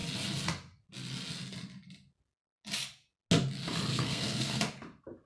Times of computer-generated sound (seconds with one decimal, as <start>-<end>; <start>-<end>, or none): 3.9-4.6